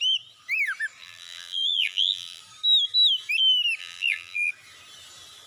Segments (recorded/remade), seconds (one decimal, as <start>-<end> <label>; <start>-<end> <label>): 0.0-1.0 recorded; 1.0-2.4 remade; 2.4-3.8 recorded; 3.8-4.5 remade; 4.5-5.5 recorded